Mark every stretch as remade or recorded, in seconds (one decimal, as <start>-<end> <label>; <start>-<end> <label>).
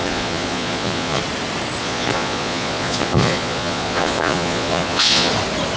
0.0-1.2 remade; 1.2-1.8 recorded; 1.8-5.3 remade; 5.3-5.8 recorded